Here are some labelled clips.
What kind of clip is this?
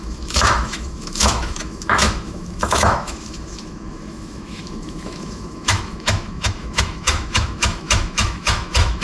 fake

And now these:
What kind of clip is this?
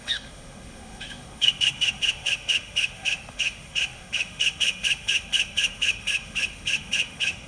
fake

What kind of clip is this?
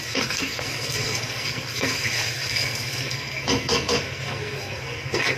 fake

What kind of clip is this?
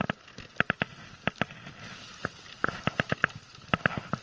real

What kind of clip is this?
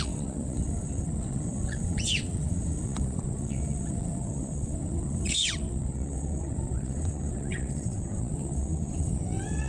fake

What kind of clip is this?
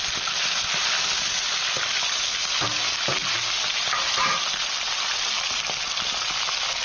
real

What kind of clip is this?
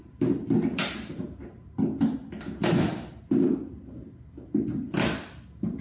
real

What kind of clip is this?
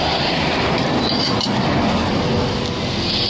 real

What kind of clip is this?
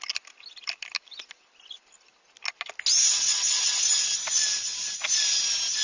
real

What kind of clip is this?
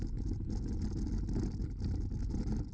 real